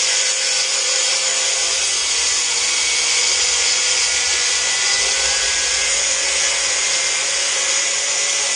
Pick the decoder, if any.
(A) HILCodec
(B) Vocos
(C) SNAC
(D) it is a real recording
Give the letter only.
B